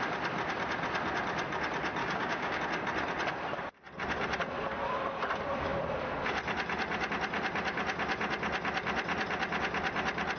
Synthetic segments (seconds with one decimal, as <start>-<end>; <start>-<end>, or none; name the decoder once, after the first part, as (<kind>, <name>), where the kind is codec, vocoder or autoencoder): 2.0-2.6 (codec, DAC)